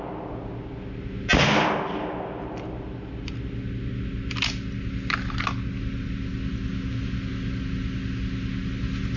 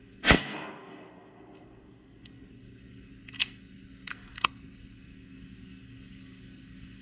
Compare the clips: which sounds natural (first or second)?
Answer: first